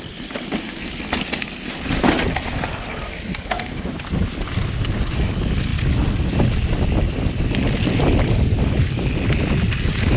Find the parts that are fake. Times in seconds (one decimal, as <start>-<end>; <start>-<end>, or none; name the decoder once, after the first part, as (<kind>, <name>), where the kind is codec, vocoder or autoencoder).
none